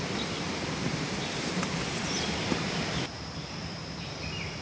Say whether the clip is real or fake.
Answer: fake